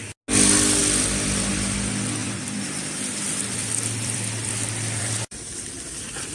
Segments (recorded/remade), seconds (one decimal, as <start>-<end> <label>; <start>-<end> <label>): 0.0-2.2 recorded; 2.2-6.3 remade